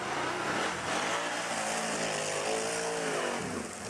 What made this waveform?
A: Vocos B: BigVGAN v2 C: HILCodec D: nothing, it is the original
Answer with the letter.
D